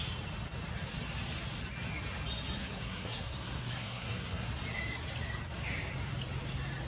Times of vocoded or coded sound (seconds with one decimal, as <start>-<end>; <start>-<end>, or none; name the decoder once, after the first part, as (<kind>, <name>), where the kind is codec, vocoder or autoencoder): 2.6-4.5 (codec, SNAC)